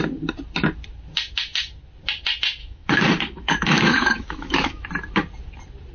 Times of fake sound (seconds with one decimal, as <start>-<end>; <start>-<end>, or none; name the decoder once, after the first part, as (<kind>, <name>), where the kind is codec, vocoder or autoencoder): 2.6-4.9 (autoencoder, DAC-VAE)